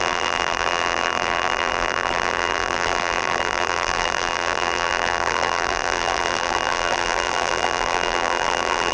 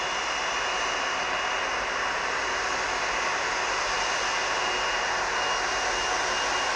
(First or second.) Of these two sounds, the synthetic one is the first